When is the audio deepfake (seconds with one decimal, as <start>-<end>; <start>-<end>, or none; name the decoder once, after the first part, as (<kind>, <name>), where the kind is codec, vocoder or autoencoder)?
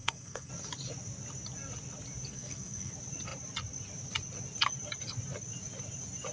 0.0-0.5 (codec, SNAC); 2.3-2.9